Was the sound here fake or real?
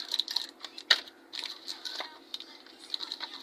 real